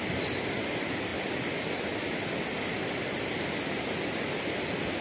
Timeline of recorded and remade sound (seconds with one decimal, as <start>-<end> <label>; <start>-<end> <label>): 0.0-5.0 recorded